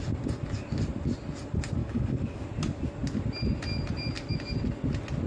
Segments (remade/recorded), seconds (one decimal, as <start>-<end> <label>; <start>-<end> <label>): 0.0-1.8 recorded; 1.8-2.4 remade; 2.4-5.3 recorded